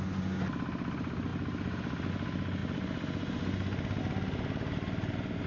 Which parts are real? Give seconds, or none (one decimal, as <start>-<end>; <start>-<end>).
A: 0.0-5.5